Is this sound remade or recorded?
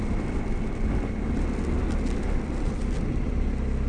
recorded